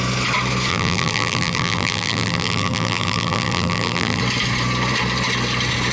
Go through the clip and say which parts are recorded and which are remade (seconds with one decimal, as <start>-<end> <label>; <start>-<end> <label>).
0.0-0.7 recorded; 0.7-4.2 remade; 4.2-5.9 recorded